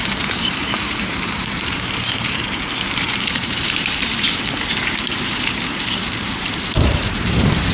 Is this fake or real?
fake